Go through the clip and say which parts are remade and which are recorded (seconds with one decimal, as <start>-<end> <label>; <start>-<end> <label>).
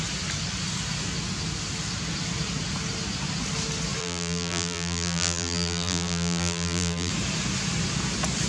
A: 0.0-4.0 recorded; 4.0-7.1 remade; 7.1-8.5 recorded